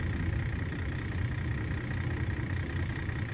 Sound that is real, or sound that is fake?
real